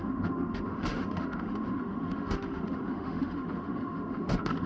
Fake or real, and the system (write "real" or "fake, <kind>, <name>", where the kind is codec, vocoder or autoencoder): fake, autoencoder, DAC-VAE